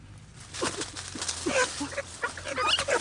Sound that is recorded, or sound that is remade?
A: recorded